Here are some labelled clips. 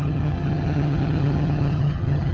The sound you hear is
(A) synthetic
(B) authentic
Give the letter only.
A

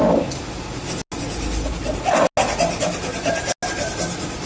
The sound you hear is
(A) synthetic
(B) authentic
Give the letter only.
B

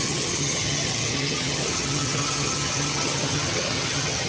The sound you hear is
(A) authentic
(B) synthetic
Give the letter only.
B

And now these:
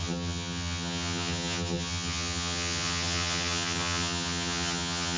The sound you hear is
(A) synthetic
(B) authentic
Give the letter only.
A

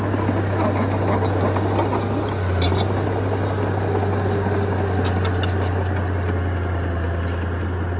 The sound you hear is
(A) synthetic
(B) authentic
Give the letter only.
B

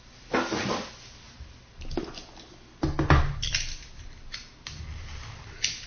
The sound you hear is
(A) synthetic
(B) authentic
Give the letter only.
B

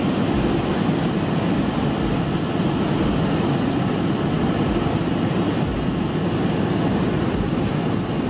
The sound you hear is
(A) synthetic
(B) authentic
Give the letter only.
B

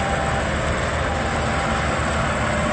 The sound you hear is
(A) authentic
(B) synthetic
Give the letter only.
A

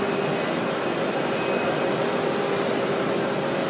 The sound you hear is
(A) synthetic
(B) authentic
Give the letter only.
B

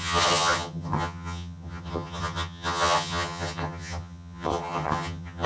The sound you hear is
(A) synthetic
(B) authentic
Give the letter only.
A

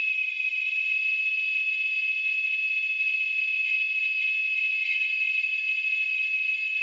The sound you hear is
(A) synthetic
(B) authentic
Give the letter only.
A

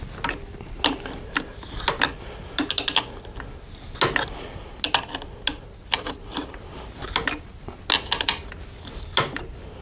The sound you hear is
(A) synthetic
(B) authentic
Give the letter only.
B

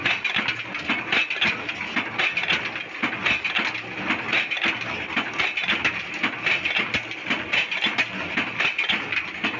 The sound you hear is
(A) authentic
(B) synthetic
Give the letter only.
A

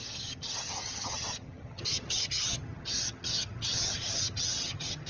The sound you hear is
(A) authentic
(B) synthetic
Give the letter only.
B